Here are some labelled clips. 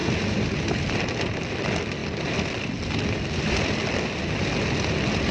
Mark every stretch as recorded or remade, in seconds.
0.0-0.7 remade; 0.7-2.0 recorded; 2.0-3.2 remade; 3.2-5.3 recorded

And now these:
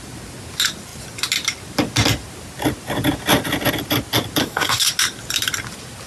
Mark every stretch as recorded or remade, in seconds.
0.0-4.4 recorded; 4.4-4.9 remade; 4.9-6.1 recorded

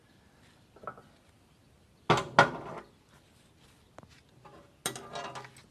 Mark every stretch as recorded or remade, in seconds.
0.0-5.7 recorded

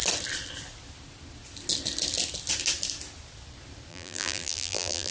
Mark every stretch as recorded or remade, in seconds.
0.0-3.9 recorded; 3.9-5.1 remade